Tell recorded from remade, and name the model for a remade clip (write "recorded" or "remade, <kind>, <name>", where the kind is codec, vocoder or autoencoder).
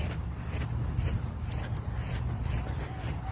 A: recorded